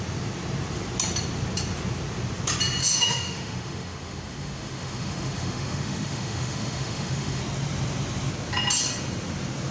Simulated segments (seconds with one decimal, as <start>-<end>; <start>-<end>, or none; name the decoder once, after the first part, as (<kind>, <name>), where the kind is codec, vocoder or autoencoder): 2.8-7.4 (autoencoder, DAC-VAE)